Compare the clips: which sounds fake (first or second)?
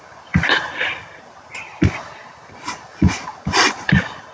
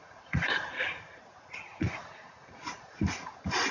second